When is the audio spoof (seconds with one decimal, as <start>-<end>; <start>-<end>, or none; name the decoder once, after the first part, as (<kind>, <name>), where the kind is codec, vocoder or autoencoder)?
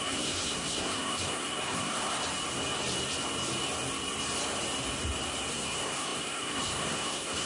0.0-2.2 (codec, SNAC); 5.5-7.5